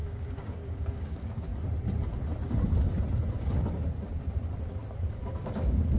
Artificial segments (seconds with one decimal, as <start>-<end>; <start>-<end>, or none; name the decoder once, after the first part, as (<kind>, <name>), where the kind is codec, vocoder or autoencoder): 0.0-1.5 (codec, DAC); 5.1-6.0